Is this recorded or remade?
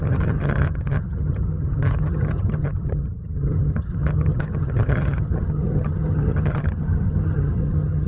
remade